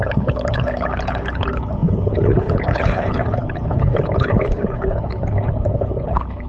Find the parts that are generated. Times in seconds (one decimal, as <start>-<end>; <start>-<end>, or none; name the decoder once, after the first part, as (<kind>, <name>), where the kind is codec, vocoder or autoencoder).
0.0-6.5 (codec, HILCodec)